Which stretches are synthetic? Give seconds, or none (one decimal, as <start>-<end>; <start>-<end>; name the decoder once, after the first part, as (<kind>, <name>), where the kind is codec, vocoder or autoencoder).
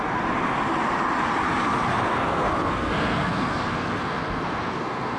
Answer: 2.1-5.2 (codec, SNAC)